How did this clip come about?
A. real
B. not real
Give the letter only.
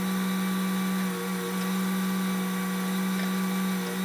A